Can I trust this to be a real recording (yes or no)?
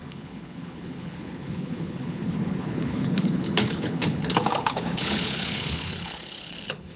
no